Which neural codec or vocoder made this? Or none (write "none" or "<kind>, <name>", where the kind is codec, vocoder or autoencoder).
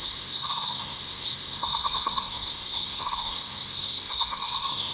codec, SNAC